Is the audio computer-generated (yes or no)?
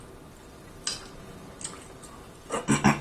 no